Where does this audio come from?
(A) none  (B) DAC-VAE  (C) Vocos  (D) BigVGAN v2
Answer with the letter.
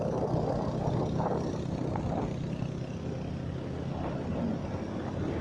A